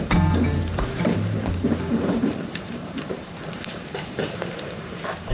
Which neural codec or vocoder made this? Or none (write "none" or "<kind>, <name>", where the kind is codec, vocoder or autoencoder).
vocoder, BigVGAN v2